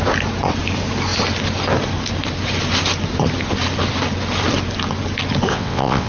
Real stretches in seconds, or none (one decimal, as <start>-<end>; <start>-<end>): 0.0-5.5